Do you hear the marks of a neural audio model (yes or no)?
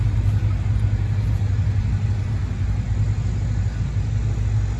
no